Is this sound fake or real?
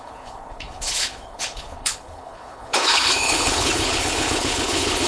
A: fake